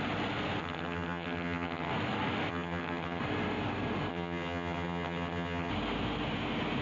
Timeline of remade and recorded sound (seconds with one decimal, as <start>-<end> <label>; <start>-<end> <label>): 0.0-0.6 recorded; 0.6-1.9 remade; 1.9-2.5 recorded; 2.5-3.2 remade; 3.2-4.1 recorded; 4.1-5.7 remade; 5.7-6.8 recorded